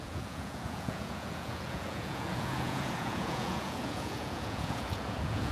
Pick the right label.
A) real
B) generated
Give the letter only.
B